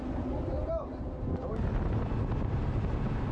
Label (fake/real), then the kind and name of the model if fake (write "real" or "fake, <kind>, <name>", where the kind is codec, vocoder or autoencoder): real